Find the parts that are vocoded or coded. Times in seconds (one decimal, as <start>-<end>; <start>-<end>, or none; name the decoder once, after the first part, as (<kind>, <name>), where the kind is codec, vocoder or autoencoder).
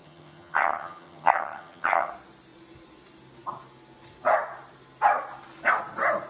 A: 0.0-2.1 (vocoder, HiFi-GAN)